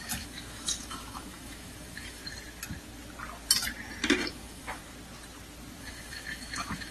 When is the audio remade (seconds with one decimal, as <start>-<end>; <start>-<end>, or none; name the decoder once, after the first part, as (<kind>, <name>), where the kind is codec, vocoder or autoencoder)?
0.0-2.2 (autoencoder, DAC-VAE); 4.3-4.8; 5.8-6.9